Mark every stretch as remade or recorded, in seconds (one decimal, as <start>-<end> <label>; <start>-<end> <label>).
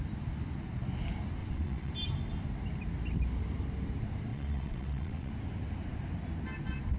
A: 0.0-1.4 recorded; 1.4-1.9 remade; 1.9-4.3 recorded; 4.3-5.3 remade; 5.3-7.0 recorded